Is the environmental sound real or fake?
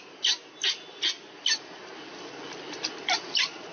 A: real